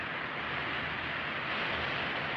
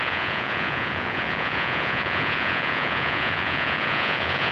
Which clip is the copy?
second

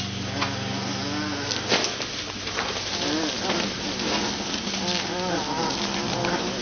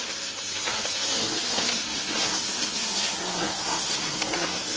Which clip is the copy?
second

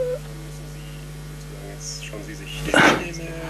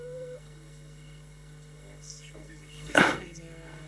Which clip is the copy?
second